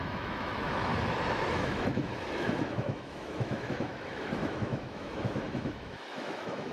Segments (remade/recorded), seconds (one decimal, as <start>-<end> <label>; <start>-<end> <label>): 0.0-0.9 remade; 0.9-1.5 recorded; 1.5-6.7 remade